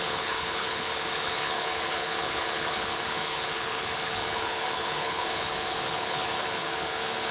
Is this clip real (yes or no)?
no